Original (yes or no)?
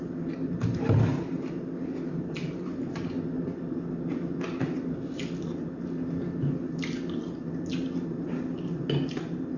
yes